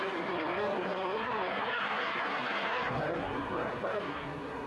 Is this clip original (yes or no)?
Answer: no